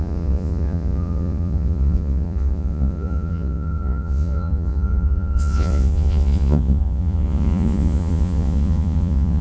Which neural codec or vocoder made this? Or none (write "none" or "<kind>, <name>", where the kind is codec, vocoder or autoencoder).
vocoder, Vocos